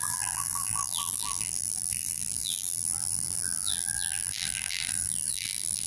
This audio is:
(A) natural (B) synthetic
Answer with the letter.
B